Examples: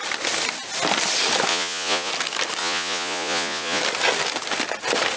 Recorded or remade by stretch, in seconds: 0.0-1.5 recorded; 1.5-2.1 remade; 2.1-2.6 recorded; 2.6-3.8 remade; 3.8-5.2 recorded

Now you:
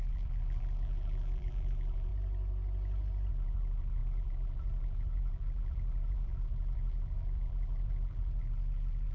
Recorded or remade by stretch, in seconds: 0.0-2.1 remade; 2.1-3.3 recorded; 3.3-9.1 remade